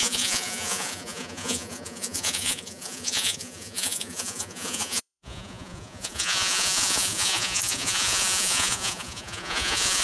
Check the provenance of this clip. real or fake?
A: fake